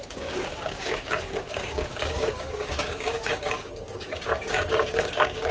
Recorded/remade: remade